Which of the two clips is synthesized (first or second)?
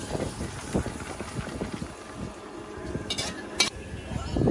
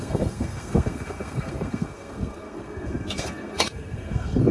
second